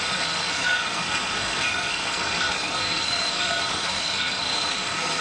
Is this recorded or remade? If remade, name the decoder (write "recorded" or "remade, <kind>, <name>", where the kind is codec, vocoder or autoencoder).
remade, codec, SNAC